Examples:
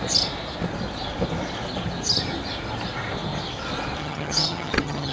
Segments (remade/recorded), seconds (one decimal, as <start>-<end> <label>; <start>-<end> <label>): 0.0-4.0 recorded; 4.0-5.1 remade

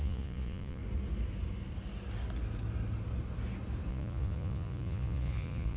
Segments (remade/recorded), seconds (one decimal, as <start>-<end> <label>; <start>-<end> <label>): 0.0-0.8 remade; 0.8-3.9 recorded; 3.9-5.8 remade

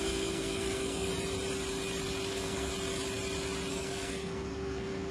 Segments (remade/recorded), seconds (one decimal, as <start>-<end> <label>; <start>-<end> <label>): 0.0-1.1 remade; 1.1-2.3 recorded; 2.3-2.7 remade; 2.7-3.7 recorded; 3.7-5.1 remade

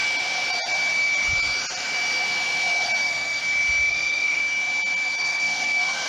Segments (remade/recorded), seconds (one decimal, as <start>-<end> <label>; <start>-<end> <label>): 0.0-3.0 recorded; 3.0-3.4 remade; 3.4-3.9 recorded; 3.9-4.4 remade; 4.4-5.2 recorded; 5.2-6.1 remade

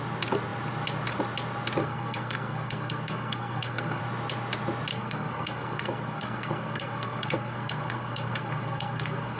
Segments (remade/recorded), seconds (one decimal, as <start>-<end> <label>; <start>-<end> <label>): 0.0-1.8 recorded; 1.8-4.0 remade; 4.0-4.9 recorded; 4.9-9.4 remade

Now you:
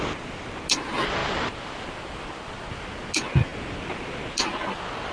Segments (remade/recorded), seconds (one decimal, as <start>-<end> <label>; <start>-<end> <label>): 0.0-5.1 recorded

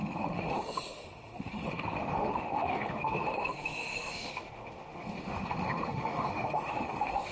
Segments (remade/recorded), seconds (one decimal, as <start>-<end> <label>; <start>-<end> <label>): 0.0-7.3 remade